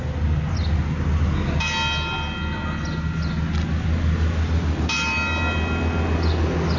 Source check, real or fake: real